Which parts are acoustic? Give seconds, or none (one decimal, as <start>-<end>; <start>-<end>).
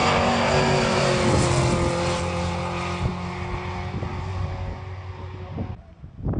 0.0-6.4